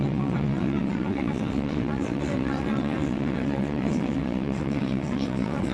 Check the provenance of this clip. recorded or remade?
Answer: remade